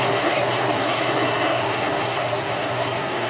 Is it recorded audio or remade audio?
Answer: remade